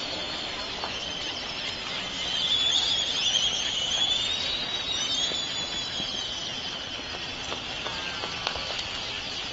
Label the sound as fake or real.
real